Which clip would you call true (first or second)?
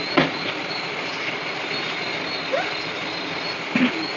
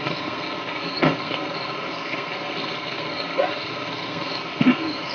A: first